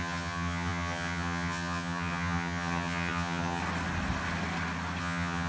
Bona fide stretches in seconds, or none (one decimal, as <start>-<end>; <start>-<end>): 3.6-5.0